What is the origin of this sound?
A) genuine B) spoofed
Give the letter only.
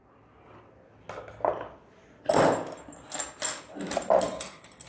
A